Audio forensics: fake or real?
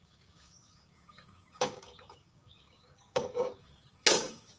fake